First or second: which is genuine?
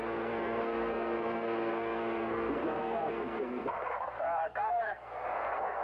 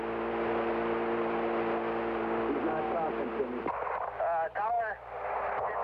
second